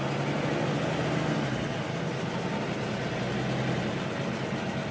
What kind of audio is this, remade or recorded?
recorded